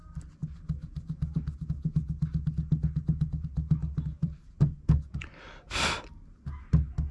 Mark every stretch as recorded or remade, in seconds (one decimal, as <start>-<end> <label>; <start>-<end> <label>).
0.0-4.1 recorded; 4.1-5.4 remade; 5.4-7.1 recorded